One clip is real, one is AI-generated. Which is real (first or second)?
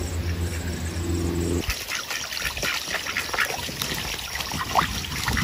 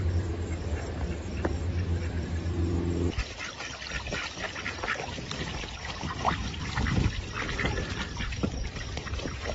first